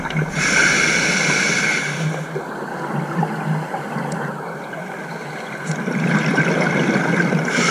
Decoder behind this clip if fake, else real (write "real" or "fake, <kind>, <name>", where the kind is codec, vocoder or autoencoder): real